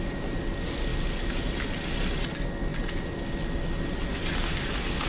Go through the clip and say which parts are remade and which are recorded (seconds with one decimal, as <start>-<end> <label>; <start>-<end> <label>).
0.0-5.1 recorded